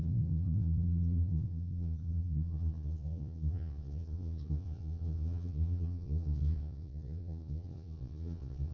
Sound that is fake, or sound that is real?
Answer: fake